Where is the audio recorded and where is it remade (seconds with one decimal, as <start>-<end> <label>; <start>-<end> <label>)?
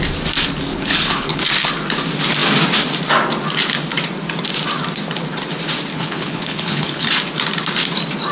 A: 0.0-0.7 recorded; 0.7-1.4 remade; 1.4-5.9 recorded; 5.9-7.1 remade; 7.1-8.3 recorded